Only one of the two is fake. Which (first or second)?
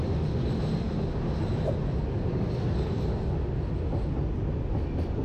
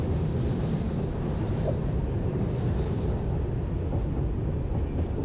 second